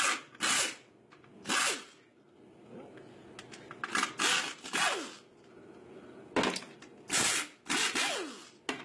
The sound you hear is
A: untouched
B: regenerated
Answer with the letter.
A